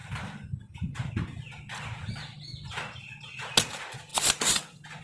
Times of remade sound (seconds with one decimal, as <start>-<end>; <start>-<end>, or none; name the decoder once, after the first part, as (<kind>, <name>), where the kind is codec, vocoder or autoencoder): 0.0-1.4 (vocoder, BigVGAN v2)